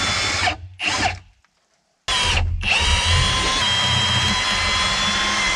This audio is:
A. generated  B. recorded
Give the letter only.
B